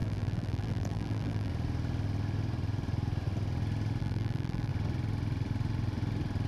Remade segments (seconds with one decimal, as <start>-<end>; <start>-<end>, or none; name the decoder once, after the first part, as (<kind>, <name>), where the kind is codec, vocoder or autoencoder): 0.0-1.5 (vocoder, BigVGAN v2); 4.0-4.7